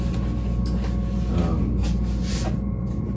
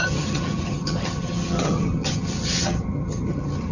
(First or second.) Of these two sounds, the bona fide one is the first